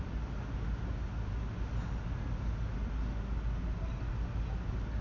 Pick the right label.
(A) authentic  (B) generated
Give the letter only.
A